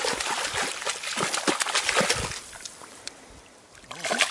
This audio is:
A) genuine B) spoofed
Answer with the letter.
A